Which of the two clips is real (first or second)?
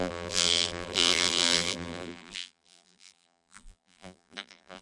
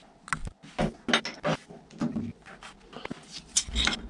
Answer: second